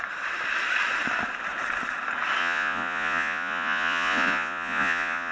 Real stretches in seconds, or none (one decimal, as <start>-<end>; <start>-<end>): 0.0-2.4